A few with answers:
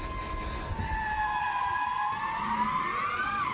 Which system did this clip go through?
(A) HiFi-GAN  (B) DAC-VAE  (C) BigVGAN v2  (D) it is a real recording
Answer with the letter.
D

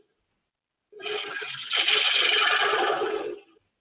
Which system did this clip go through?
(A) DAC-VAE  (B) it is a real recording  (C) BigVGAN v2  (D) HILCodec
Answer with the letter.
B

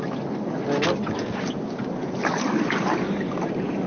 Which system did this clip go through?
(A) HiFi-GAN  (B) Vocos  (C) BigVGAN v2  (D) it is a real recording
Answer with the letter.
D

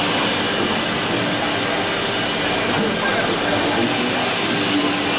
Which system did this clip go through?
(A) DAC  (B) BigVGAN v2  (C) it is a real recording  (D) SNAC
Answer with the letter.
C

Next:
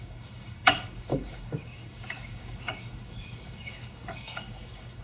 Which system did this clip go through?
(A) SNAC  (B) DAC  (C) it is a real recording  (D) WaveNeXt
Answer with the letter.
B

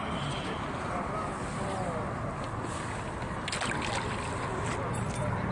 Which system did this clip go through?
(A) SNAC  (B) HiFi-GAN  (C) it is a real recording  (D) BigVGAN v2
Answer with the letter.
C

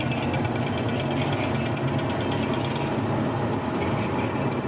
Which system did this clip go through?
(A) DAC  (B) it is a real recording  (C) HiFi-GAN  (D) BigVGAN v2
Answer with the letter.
B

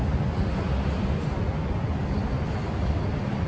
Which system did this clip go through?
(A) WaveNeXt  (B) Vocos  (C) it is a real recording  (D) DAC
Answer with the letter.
C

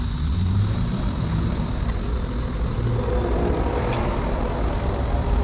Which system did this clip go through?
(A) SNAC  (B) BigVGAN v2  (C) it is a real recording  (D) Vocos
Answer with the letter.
C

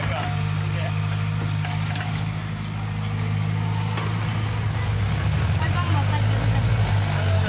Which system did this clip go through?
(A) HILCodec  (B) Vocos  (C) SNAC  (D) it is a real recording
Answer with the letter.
D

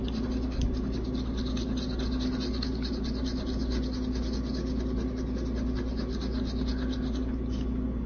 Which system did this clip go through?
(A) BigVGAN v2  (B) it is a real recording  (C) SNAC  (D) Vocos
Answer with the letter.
B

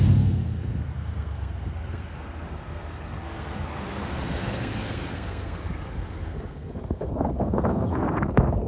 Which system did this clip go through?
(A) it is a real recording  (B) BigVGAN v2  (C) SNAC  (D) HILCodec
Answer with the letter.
C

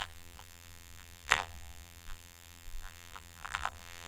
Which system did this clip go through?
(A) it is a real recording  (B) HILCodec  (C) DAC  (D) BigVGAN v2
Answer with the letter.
D